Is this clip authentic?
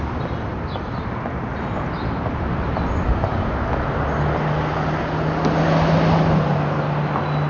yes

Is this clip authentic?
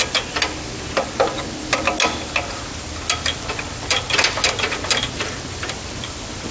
yes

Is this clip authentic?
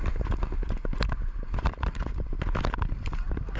yes